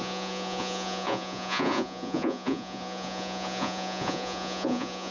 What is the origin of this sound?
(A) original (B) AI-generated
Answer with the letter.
B